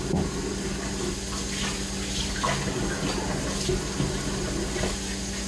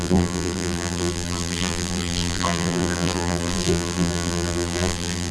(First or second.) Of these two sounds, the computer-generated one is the second